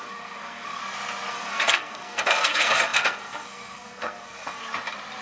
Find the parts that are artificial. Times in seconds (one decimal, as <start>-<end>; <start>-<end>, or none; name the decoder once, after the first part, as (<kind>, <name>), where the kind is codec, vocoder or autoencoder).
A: 0.0-0.8 (codec, SNAC); 1.3-4.6